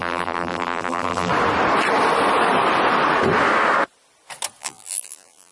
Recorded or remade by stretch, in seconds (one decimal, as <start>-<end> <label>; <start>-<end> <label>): 0.0-1.3 remade; 1.3-4.6 recorded; 4.6-5.5 remade